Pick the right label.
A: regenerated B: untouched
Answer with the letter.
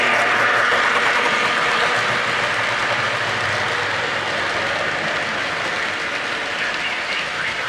B